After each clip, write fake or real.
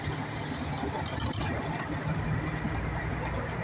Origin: real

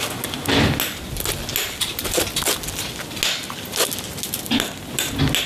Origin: real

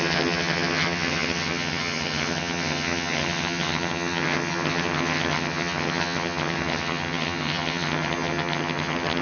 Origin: fake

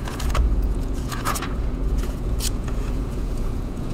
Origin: fake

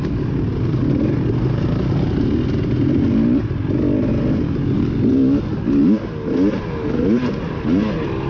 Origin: real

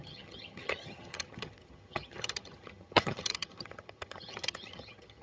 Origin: fake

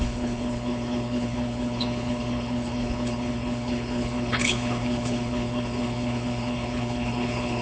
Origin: fake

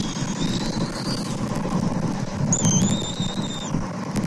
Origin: real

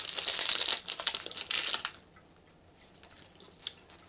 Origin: fake